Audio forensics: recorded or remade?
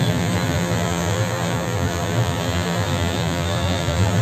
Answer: remade